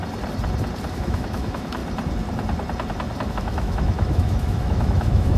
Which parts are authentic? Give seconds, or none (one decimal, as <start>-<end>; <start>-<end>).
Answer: 0.0-0.9; 1.8-3.3